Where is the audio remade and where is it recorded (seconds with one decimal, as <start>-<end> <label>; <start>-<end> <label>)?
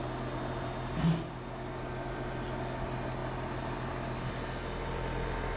0.0-5.6 recorded